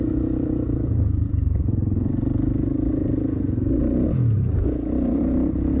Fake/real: fake